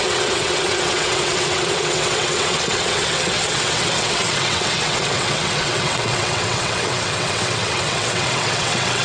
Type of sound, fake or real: fake